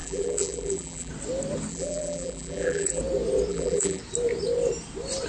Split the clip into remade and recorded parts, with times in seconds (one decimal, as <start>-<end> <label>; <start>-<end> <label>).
0.0-1.1 remade; 1.1-1.7 recorded; 1.7-3.0 remade; 3.0-3.5 recorded; 3.5-4.0 remade; 4.0-5.3 recorded